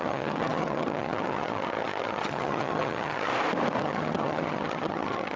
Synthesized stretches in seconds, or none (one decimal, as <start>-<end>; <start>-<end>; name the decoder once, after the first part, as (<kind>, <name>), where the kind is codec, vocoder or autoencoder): 0.0-3.3 (vocoder, HiFi-GAN); 3.8-5.4